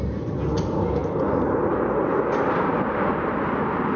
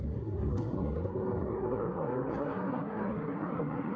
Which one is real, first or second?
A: first